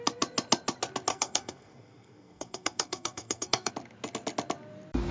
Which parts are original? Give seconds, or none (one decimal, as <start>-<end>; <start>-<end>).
0.0-1.1; 3.7-5.1

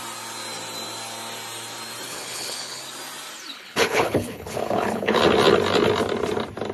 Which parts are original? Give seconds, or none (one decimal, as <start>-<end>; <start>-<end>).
0.0-2.1; 2.8-3.5; 5.2-6.7

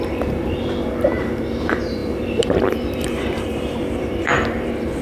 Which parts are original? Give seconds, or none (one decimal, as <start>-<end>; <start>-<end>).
none

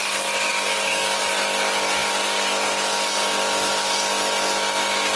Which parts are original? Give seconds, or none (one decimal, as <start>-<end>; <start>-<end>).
0.0-0.5; 1.3-5.2

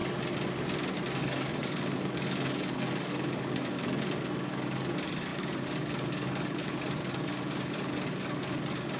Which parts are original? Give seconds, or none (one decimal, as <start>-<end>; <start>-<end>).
0.0-1.2